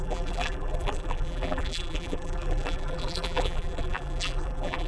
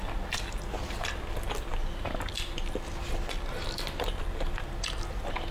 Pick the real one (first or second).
second